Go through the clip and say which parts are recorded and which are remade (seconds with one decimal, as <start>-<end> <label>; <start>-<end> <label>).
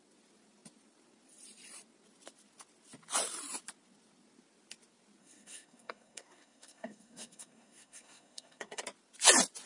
0.0-5.2 recorded; 5.2-8.8 remade; 8.8-9.7 recorded